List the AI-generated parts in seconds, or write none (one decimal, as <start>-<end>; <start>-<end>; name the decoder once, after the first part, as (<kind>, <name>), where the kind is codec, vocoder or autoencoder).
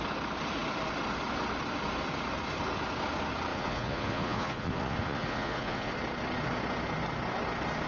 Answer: 3.5-5.9 (vocoder, Vocos)